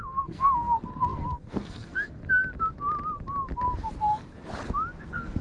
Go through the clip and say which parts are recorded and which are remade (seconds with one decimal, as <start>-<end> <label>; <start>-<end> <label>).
0.0-2.2 remade; 2.2-5.0 recorded; 5.0-5.4 remade